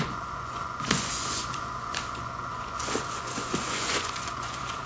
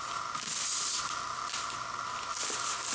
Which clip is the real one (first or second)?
second